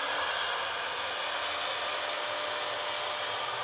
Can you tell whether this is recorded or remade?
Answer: recorded